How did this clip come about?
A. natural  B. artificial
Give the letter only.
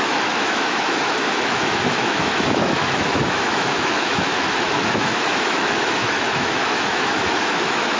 B